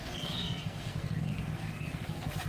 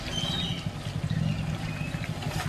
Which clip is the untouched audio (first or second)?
second